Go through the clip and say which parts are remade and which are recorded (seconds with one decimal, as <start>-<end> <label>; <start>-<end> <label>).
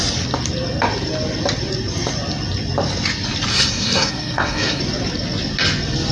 0.0-3.5 recorded; 3.5-4.8 remade; 4.8-6.1 recorded